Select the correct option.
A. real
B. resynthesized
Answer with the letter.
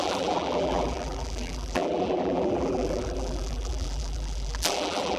B